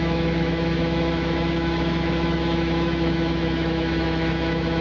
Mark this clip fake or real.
fake